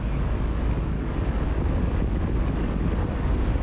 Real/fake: fake